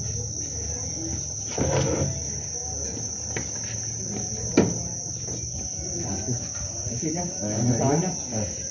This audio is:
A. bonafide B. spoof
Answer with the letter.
A